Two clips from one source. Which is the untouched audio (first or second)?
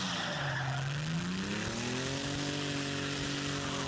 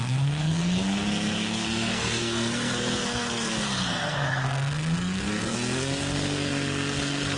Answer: first